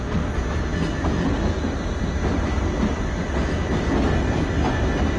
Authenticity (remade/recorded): recorded